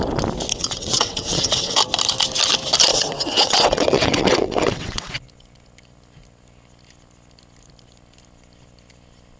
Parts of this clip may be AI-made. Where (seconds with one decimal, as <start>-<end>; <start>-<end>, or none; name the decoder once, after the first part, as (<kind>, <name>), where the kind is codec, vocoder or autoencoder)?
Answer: 0.5-1.8 (vocoder, WaveNeXt); 2.9-5.1